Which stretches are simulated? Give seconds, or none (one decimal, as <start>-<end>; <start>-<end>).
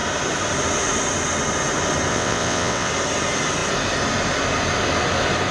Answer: 2.1-2.9